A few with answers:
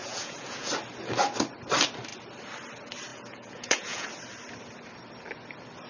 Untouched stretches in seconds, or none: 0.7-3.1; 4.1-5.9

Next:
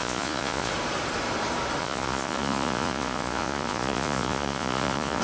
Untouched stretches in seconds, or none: 0.7-1.8

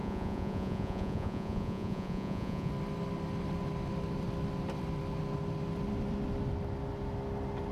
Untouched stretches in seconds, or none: 2.7-7.7

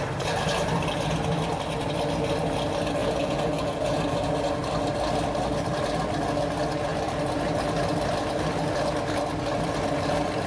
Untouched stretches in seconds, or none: 0.0-3.0; 4.0-10.5

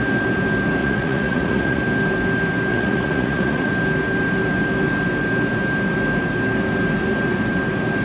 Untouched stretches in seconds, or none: 0.0-0.8; 1.8-2.7; 3.7-8.0